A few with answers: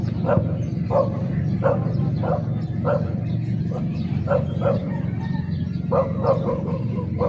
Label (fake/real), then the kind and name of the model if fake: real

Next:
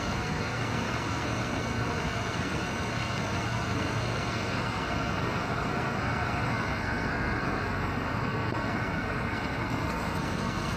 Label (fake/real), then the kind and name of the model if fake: fake, codec, SNAC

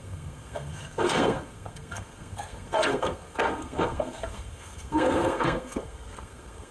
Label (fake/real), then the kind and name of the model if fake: fake, codec, SNAC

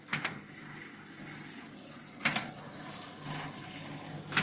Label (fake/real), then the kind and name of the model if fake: real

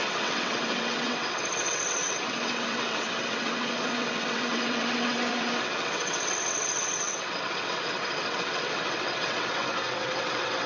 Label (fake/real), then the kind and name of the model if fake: fake, vocoder, WaveNeXt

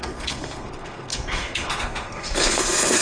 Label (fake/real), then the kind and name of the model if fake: fake, codec, SNAC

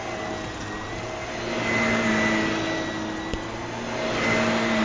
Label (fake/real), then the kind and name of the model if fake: real